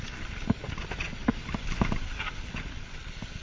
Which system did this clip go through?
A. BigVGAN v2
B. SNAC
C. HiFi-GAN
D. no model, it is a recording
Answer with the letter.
D